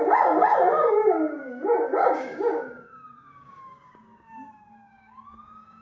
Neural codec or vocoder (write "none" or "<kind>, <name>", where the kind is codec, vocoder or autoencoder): codec, DAC